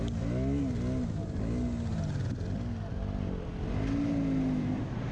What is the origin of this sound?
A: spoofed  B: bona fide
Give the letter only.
B